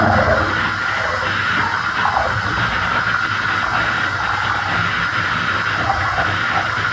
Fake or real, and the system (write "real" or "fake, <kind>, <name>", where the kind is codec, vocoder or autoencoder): real